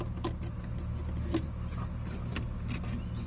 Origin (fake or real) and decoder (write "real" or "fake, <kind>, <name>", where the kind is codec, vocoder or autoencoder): real